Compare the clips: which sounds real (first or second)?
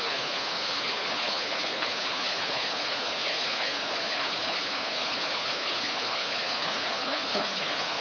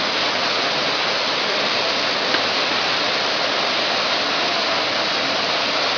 second